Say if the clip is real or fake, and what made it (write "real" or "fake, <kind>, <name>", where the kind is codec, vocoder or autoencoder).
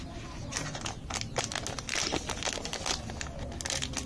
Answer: real